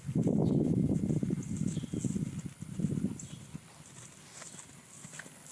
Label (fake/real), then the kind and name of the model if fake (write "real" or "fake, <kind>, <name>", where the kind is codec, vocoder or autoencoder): real